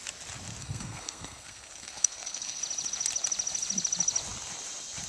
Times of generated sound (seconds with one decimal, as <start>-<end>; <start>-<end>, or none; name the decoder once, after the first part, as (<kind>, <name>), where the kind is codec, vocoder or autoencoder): 0.6-2.6 (codec, SNAC)